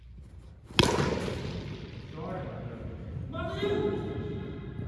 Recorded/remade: recorded